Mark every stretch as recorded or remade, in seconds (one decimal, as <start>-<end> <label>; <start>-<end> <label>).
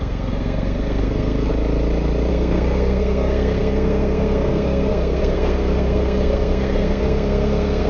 0.0-1.5 remade; 1.5-2.3 recorded; 2.3-7.9 remade